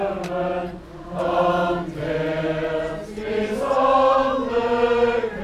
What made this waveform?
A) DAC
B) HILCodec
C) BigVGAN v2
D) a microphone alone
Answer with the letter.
D